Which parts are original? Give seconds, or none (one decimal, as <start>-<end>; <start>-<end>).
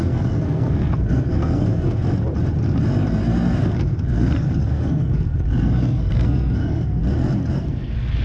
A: 2.0-3.6; 7.0-7.6